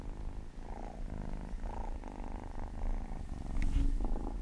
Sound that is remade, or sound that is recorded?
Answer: recorded